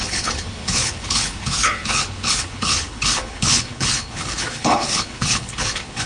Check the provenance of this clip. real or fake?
fake